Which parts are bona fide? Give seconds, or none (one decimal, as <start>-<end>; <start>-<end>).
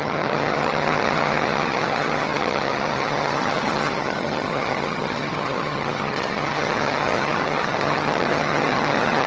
none